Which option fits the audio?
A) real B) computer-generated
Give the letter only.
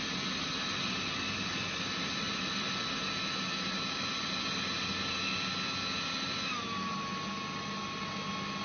A